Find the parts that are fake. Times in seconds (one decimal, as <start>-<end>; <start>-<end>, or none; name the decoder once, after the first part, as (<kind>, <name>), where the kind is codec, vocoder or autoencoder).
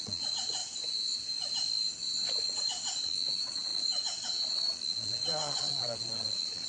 0.0-0.6 (vocoder, Vocos); 2.4-6.7